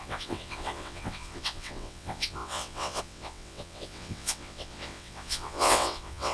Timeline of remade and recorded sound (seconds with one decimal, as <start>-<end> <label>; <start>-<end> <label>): 0.0-6.3 remade